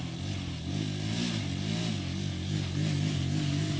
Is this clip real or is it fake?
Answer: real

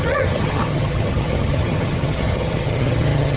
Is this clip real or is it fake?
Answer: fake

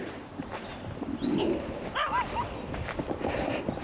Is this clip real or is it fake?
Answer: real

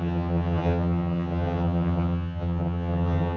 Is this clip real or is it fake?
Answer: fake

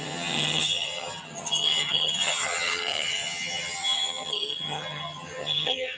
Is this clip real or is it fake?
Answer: fake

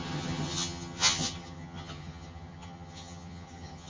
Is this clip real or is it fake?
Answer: fake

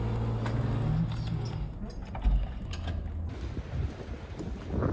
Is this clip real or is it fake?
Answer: real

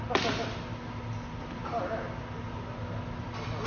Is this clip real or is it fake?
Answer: real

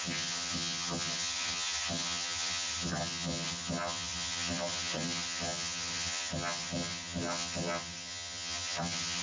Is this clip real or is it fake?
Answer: fake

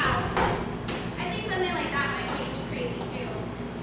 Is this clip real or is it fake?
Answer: real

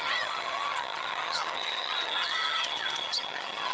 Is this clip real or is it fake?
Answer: fake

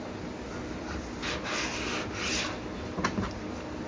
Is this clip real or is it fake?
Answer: real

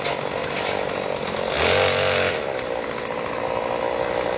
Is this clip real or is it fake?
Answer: real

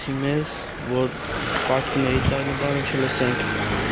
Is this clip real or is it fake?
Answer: real